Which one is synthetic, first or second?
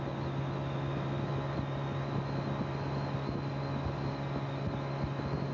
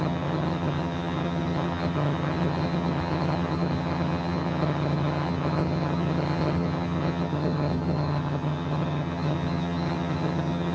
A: second